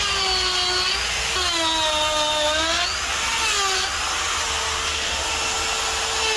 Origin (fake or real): real